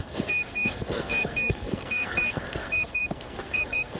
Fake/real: fake